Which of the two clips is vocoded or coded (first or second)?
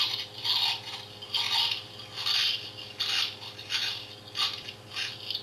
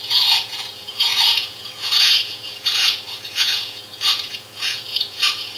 second